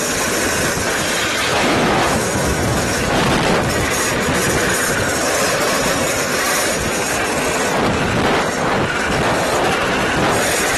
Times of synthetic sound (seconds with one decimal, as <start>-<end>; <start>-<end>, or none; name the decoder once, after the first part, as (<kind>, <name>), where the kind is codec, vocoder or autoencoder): 1.5-3.2 (autoencoder, DAC-VAE)